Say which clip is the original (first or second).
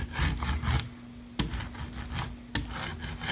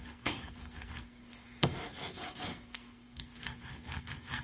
first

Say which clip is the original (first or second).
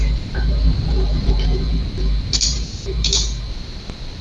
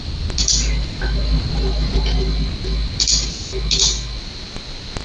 second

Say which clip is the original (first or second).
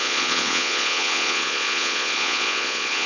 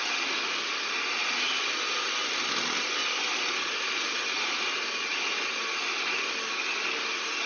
second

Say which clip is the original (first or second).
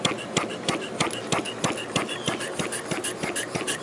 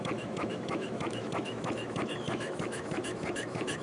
first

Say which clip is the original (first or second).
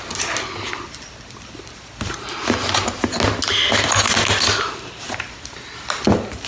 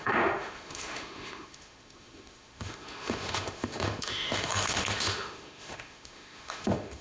first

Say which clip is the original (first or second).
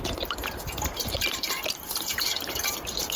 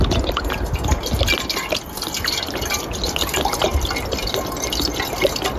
second